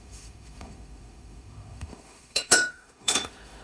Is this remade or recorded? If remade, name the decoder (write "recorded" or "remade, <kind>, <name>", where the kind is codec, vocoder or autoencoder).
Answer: remade, autoencoder, DAC-VAE